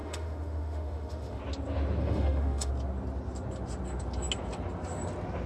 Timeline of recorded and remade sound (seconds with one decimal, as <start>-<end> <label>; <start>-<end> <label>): 0.0-1.4 remade; 1.4-2.0 recorded; 2.0-2.7 remade; 2.7-5.5 recorded